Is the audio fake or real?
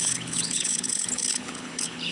fake